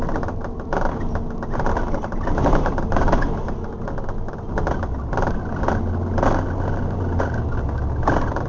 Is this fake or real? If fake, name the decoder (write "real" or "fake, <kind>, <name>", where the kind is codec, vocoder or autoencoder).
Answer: real